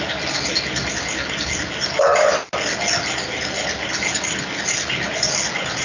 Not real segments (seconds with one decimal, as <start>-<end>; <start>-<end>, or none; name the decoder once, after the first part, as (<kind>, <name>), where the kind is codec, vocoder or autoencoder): none

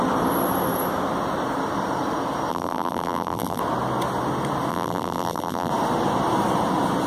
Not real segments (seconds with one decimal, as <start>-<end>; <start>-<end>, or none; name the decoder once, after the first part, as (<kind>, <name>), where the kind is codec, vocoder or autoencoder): 2.5-3.6 (vocoder, BigVGAN v2); 4.7-5.7

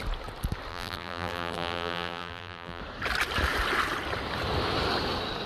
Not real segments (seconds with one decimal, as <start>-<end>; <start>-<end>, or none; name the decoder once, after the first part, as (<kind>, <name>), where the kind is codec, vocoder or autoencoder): 0.7-2.8 (vocoder, BigVGAN v2)